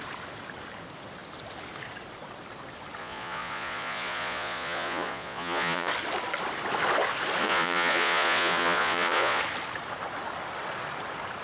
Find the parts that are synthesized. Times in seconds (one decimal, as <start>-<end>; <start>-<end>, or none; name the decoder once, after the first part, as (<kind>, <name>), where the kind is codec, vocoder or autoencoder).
3.0-5.9 (vocoder, Vocos); 7.4-9.4